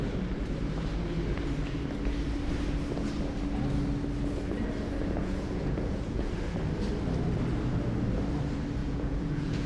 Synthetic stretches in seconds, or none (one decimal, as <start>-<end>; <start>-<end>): 5.2-6.3; 8.8-9.7